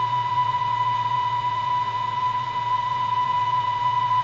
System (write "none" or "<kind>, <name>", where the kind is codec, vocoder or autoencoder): vocoder, Vocos